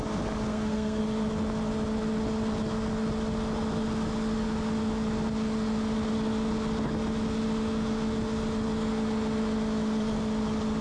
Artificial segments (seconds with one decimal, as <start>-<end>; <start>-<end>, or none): 0.5-1.0